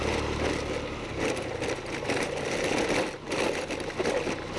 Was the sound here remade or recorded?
recorded